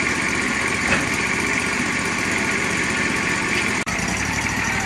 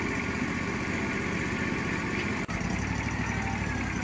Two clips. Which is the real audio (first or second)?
second